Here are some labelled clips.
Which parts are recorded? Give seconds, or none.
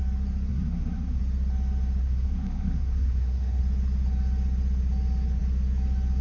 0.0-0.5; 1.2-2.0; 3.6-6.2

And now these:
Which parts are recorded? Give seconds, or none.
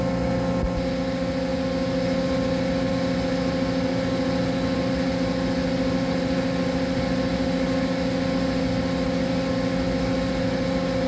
0.0-11.1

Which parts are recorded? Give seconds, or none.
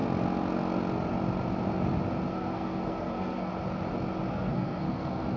0.0-2.3; 3.5-4.3